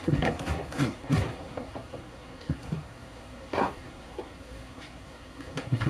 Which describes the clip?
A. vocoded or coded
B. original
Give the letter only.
A